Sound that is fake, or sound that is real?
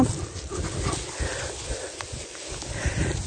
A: real